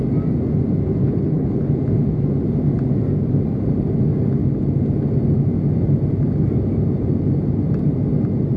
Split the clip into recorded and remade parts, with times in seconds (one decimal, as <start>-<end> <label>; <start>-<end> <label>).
0.0-1.0 recorded; 1.0-1.7 remade; 1.7-8.6 recorded